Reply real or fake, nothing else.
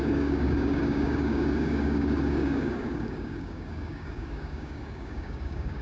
fake